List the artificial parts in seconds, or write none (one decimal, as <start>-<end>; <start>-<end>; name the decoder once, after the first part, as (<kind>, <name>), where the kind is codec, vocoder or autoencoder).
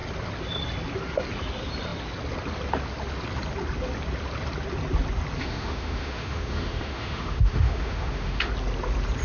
5.4-8.5 (autoencoder, DAC-VAE)